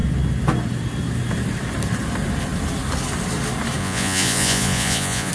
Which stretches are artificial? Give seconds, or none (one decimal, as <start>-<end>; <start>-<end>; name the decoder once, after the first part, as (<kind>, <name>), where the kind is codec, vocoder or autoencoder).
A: 3.8-5.3 (vocoder, Vocos)